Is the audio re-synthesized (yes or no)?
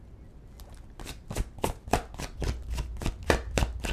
no